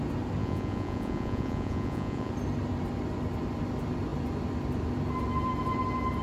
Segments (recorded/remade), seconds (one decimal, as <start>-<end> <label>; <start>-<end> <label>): 0.0-0.4 recorded; 0.4-2.3 remade; 2.3-6.2 recorded